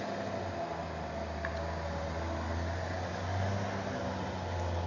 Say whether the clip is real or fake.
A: real